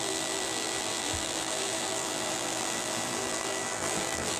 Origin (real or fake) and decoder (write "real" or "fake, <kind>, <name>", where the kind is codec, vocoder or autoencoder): fake, vocoder, BigVGAN v2